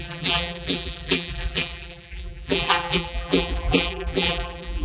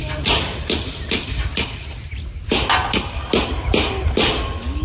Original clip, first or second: second